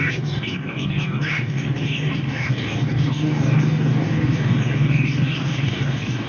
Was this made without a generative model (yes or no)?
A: no